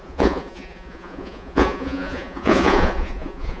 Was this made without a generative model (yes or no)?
no